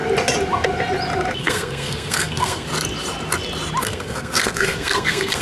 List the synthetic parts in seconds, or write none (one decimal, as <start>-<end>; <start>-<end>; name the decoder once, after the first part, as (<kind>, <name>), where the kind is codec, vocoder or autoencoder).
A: 1.4-2.7 (codec, SNAC); 3.8-5.4

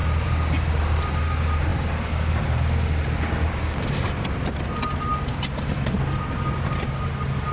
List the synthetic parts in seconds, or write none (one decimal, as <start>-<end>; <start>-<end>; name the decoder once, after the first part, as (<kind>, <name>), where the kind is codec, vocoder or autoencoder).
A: none

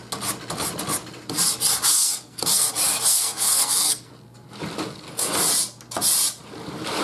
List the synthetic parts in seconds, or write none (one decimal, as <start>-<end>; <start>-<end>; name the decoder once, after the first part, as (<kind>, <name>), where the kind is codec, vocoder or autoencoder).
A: 1.9-2.7 (codec, SNAC); 3.1-4.1

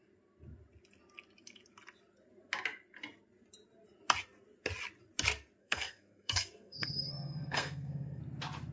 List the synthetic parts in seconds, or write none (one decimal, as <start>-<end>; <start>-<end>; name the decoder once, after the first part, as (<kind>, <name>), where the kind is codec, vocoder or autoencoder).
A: 5.6-8.2 (codec, SNAC)

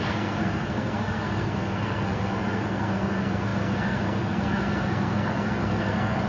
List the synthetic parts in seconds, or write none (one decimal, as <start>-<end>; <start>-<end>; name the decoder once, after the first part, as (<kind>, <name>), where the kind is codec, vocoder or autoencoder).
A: 0.0-6.3 (codec, SNAC)

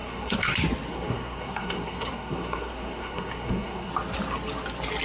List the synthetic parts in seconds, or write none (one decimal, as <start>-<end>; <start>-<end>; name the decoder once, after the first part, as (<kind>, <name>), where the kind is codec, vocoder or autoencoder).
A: 0.0-0.5 (codec, SNAC); 0.9-3.9